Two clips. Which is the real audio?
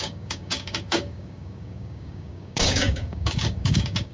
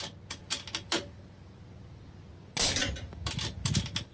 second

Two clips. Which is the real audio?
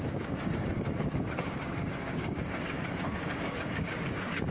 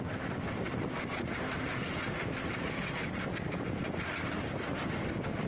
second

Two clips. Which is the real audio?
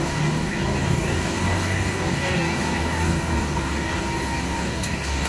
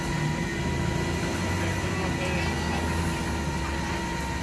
second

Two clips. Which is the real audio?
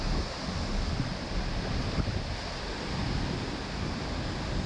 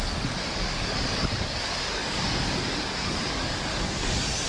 first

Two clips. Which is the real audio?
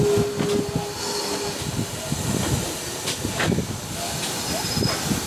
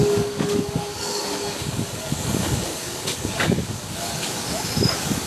first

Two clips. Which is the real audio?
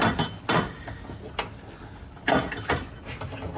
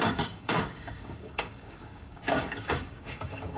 first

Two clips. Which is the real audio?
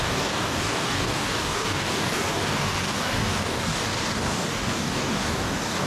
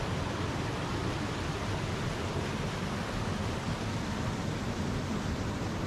second